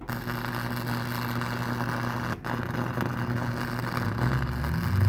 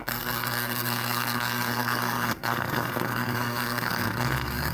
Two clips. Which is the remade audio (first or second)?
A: second